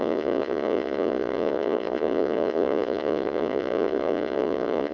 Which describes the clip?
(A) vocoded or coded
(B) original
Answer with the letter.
A